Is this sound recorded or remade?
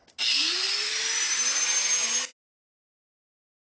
recorded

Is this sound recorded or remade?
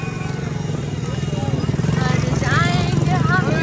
recorded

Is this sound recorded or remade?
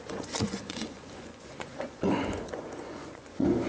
remade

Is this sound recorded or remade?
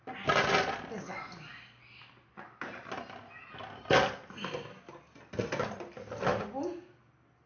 recorded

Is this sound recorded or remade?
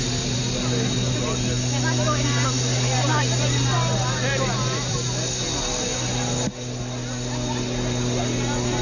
recorded